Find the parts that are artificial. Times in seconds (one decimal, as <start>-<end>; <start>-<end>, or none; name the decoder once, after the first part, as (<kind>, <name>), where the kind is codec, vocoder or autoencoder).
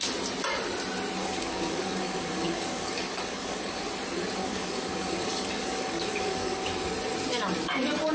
1.2-3.8 (codec, DAC); 4.4-6.7